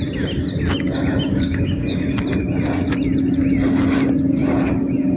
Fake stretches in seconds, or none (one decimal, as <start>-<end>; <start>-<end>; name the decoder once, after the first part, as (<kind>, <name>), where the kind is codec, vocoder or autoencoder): 1.3-2.2 (codec, DAC)